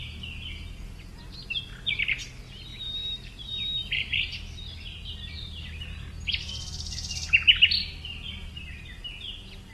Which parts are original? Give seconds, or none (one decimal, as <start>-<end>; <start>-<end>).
0.0-2.7; 4.2-9.7